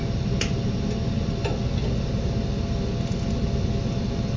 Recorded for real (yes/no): yes